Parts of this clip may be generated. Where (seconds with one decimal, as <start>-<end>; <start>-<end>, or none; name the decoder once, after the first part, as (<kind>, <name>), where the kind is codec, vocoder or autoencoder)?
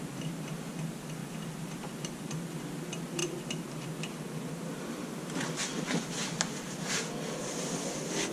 none